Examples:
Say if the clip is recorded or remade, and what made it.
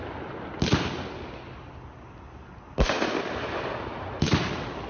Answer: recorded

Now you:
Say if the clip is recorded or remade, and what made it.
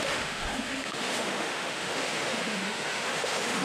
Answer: remade, autoencoder, DAC-VAE